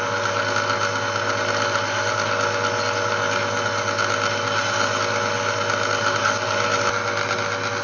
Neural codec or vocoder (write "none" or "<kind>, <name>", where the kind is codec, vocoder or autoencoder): none